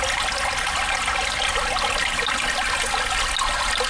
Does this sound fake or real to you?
real